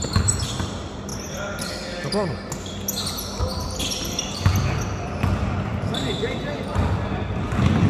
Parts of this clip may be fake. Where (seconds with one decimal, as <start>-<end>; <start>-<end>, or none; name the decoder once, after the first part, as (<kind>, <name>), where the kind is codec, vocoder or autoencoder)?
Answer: none